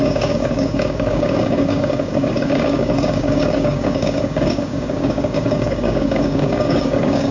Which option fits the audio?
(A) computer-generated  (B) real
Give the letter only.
A